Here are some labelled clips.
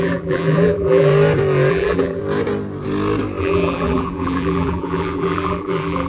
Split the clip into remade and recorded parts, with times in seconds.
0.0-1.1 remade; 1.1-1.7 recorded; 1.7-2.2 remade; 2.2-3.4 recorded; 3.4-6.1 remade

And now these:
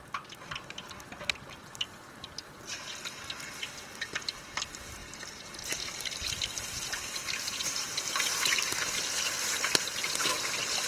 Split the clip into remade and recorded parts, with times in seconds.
0.0-5.0 recorded; 5.0-8.9 remade; 8.9-10.9 recorded

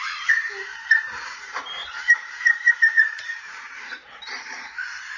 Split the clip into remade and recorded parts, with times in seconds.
0.0-5.2 remade

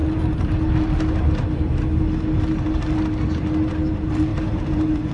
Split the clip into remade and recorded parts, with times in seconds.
0.0-4.3 recorded; 4.3-5.1 remade

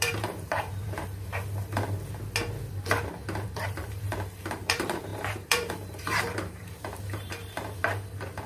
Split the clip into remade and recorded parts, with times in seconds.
0.0-1.3 remade; 1.3-3.4 recorded; 3.4-7.8 remade; 7.8-8.5 recorded

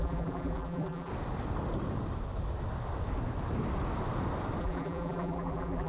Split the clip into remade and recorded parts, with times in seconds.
0.0-1.1 remade; 1.1-4.6 recorded; 4.6-5.9 remade

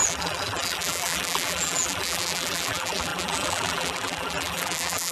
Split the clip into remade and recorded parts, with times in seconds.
0.0-5.1 remade